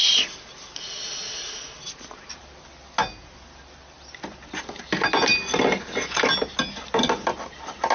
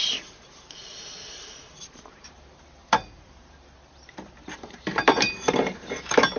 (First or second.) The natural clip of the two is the first